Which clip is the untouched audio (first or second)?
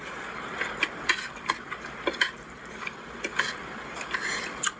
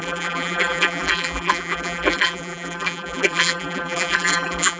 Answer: first